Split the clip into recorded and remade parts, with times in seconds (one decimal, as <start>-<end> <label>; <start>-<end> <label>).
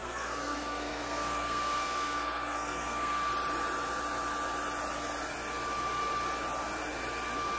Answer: 0.0-3.3 remade; 3.3-7.6 recorded